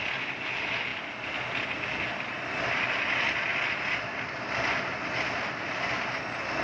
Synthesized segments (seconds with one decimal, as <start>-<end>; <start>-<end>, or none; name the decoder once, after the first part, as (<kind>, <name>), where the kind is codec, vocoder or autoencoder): none